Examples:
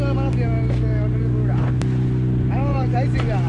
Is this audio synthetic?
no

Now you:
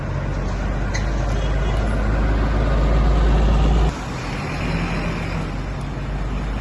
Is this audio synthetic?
no